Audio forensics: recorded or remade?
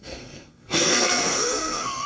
remade